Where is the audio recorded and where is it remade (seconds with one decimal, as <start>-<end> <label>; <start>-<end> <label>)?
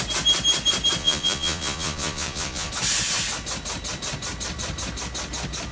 0.0-1.0 recorded; 1.0-2.7 remade; 2.7-5.7 recorded